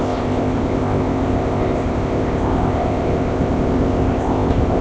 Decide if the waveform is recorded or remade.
remade